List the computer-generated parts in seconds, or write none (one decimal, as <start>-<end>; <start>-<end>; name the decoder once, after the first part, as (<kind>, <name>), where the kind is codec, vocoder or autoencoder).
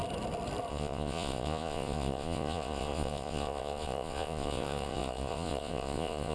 0.7-6.3 (vocoder, Vocos)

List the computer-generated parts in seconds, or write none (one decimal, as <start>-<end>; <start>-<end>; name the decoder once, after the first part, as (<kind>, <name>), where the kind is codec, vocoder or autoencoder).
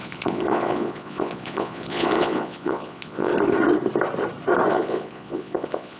0.0-3.3 (vocoder, Vocos); 4.7-6.0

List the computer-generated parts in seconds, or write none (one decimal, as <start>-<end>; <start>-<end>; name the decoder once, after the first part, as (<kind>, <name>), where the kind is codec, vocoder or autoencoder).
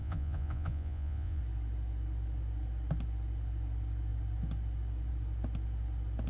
0.0-1.4 (vocoder, Vocos)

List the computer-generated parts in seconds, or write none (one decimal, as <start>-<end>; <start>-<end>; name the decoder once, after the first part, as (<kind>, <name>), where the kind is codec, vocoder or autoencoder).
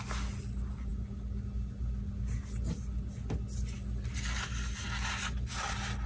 none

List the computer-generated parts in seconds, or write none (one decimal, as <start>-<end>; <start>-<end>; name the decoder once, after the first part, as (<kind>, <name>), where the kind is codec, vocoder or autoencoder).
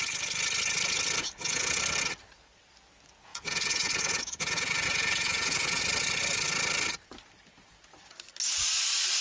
1.2-1.8 (vocoder, Vocos); 3.3-5.8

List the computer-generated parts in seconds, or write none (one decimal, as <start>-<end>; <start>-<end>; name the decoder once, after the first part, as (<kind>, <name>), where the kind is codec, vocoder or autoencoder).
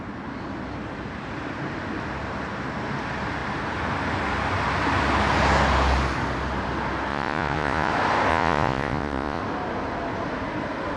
7.1-7.9 (vocoder, Vocos); 8.3-9.4